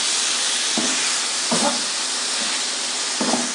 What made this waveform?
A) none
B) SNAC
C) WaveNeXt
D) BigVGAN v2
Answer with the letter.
A